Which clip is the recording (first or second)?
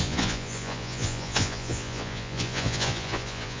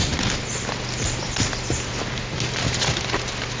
second